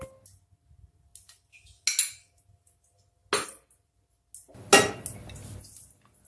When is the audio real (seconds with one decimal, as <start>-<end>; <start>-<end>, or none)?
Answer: 0.0-6.3